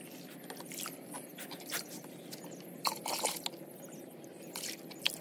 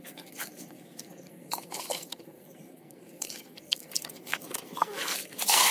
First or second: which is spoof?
second